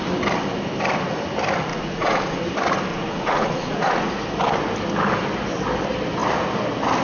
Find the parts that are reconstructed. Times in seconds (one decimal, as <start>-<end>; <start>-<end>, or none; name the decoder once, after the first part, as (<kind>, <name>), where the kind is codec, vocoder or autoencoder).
1.7-2.4 (vocoder, Vocos); 2.9-4.1